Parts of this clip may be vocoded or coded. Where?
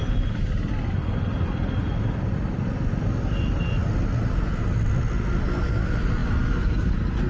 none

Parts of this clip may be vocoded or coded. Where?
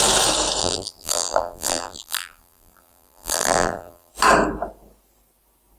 0.6-4.1 (vocoder, BigVGAN v2)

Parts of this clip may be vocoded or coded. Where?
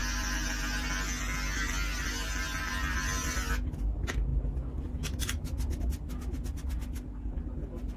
none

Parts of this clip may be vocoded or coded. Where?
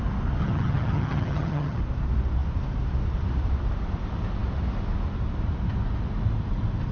0.4-1.8 (vocoder, HiFi-GAN)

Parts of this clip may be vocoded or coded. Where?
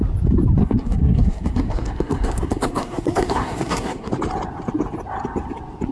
0.6-4.1 (codec, SNAC)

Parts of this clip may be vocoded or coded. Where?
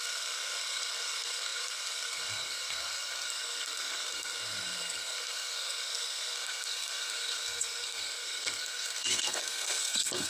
0.0-10.3 (codec, SNAC)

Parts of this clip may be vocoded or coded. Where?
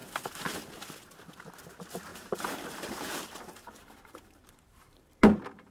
2.1-5.7 (vocoder, BigVGAN v2)